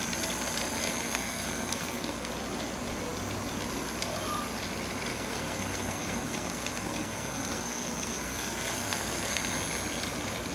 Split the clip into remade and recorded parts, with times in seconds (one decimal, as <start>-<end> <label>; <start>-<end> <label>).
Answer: 0.0-0.8 recorded; 0.8-2.3 remade; 2.3-5.1 recorded; 5.1-9.4 remade; 9.4-10.5 recorded